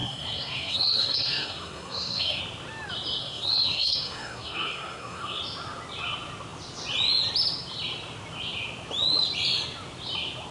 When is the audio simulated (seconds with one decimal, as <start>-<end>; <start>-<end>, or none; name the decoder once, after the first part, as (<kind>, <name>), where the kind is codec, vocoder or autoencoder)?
0.0-2.4 (codec, SNAC); 3.2-5.4